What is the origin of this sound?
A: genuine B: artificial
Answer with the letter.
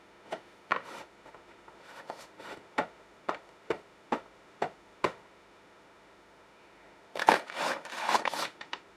B